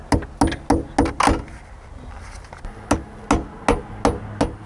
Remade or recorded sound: recorded